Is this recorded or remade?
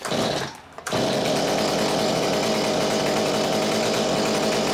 recorded